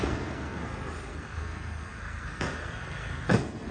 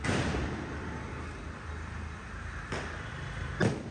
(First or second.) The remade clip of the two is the first